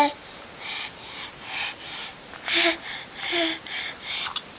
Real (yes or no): no